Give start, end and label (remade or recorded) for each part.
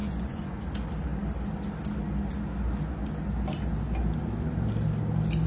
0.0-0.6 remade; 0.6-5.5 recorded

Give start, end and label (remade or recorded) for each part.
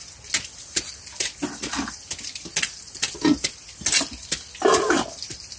0.0-5.6 recorded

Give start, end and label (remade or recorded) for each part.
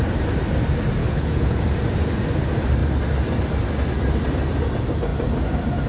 0.0-1.0 recorded; 1.0-1.6 remade; 1.6-5.9 recorded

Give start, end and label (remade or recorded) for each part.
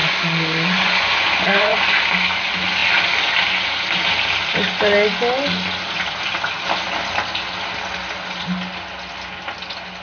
0.0-2.0 remade; 2.0-10.0 recorded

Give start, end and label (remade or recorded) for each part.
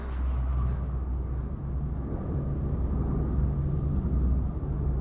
0.0-5.0 recorded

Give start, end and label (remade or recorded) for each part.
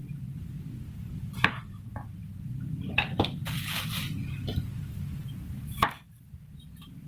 0.0-3.4 recorded; 3.4-4.3 remade; 4.3-7.1 recorded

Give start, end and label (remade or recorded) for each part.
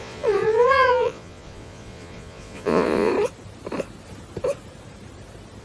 0.0-3.1 remade; 3.1-5.6 recorded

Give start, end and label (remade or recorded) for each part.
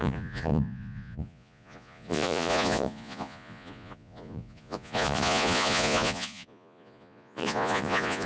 0.0-8.3 remade